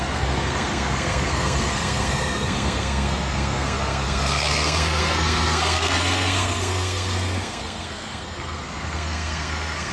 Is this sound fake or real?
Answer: fake